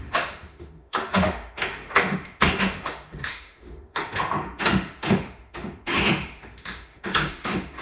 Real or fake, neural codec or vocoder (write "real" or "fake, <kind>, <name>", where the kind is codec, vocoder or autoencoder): fake, autoencoder, DAC-VAE